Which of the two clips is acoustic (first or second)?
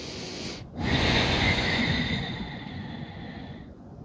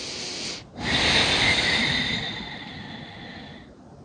second